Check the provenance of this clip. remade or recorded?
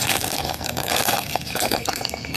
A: remade